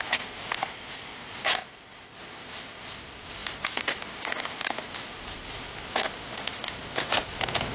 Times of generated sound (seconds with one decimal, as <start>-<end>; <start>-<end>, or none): none

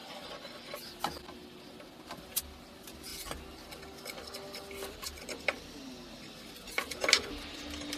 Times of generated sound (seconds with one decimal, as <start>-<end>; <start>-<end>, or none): none

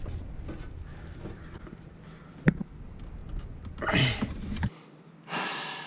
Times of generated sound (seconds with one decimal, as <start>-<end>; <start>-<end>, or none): none

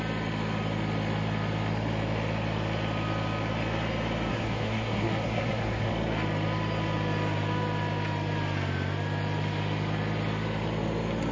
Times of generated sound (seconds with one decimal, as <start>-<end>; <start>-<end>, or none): 4.3-5.9

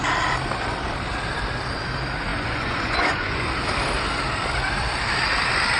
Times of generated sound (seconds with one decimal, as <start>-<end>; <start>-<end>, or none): 2.3-3.5